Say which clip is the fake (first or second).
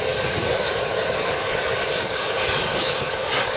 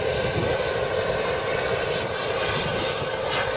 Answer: first